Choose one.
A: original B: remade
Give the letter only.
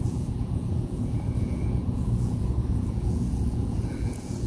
B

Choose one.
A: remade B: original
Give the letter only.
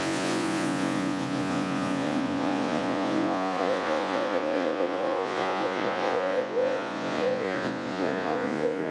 A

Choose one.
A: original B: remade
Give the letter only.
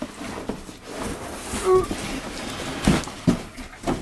A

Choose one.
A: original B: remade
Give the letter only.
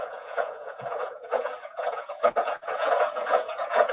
B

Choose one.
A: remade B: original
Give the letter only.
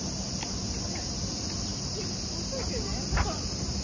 B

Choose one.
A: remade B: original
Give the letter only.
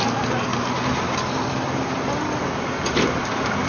B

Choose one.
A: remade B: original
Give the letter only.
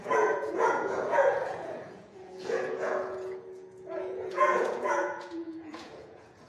A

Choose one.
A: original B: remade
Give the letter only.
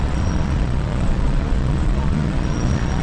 B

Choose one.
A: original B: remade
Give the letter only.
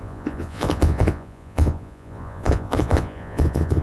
B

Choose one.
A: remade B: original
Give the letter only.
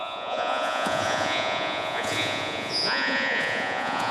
A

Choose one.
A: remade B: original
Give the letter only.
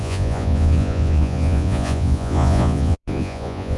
A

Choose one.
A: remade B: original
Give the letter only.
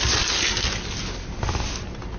B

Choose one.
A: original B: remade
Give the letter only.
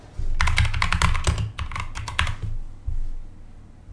A